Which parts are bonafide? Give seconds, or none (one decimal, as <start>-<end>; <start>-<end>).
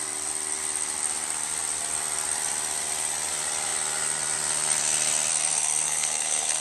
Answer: 0.0-5.3